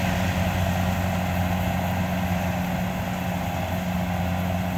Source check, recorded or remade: recorded